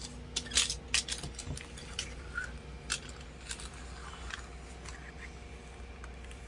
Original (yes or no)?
yes